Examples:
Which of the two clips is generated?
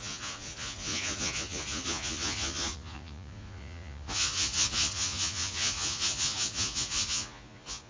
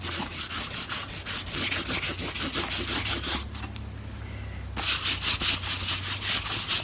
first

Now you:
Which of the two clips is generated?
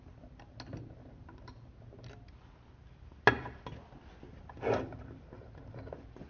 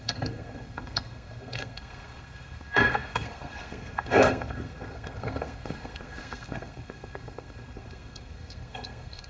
second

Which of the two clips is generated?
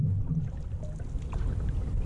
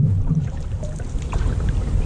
second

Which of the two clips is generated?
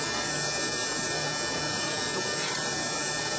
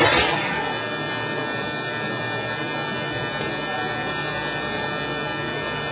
first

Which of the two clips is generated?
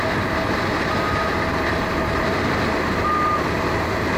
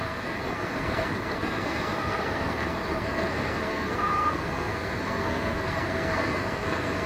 second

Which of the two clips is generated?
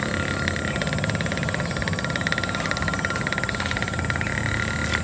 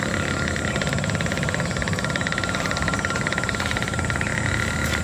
second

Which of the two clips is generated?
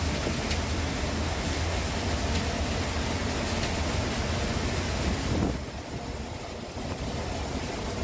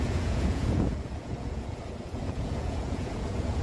second